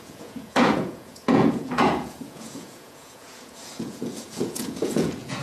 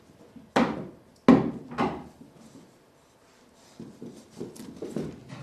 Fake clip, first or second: first